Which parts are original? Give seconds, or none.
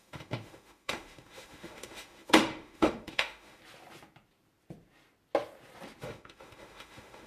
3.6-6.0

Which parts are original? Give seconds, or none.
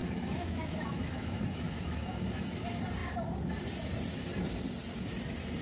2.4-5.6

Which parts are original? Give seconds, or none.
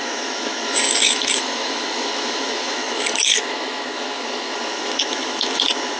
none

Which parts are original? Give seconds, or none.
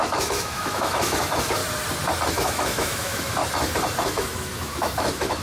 1.6-2.3; 3.4-4.1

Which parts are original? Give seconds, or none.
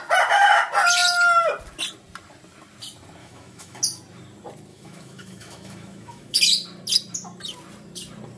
0.0-3.2; 3.8-4.7; 6.4-8.4